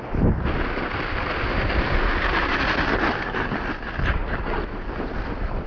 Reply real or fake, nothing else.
real